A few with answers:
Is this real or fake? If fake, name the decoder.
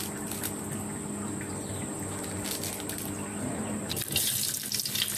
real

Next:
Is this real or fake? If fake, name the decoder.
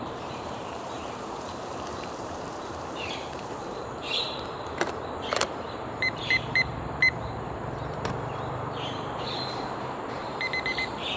fake, vocoder, BigVGAN v2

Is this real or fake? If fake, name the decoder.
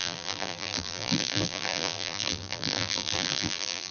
fake, vocoder, BigVGAN v2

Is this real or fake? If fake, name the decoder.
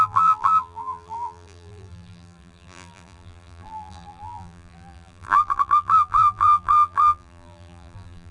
fake, vocoder, BigVGAN v2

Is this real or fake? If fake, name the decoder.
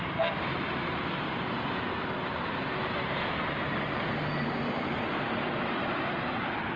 fake, vocoder, BigVGAN v2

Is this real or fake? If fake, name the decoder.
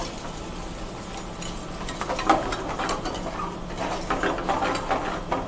real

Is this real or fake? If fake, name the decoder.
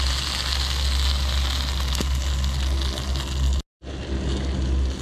real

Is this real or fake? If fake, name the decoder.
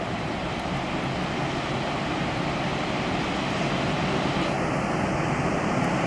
fake, vocoder, BigVGAN v2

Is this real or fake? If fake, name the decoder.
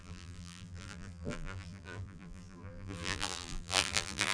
fake, vocoder, BigVGAN v2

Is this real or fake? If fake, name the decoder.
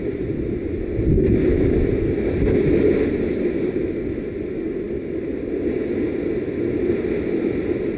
real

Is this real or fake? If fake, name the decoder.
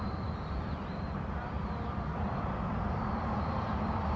fake, vocoder, BigVGAN v2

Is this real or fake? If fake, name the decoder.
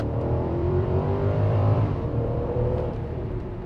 fake, vocoder, BigVGAN v2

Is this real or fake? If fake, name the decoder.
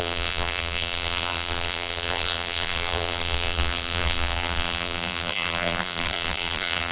fake, vocoder, BigVGAN v2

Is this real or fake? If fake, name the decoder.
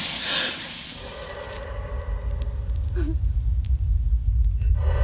real